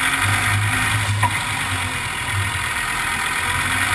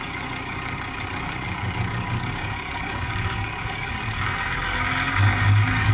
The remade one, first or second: second